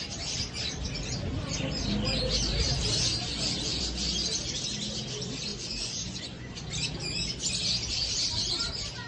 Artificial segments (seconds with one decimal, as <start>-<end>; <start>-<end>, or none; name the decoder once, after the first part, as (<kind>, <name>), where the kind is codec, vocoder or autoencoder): 3.2-3.8 (vocoder, Vocos); 5.5-6.7